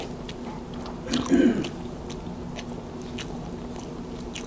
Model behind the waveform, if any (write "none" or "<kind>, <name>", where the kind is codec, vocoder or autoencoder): none